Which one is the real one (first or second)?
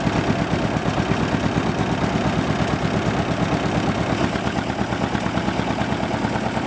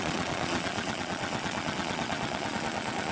first